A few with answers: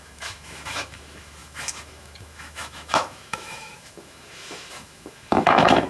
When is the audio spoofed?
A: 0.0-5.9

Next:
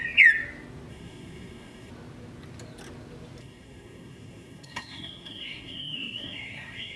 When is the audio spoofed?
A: 0.9-1.9; 3.4-7.0

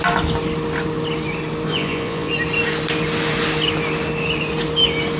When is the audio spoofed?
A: 1.7-2.3

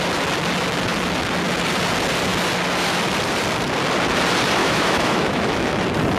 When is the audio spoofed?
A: 4.6-5.8